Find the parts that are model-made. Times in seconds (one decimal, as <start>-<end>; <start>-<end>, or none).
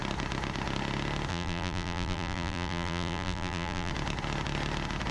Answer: 1.3-3.9